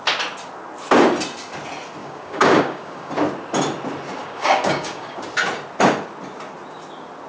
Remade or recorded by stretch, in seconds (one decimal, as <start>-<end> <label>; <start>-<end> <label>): 0.0-2.0 recorded; 2.0-3.1 remade; 3.1-4.2 recorded; 4.2-5.2 remade; 5.2-7.3 recorded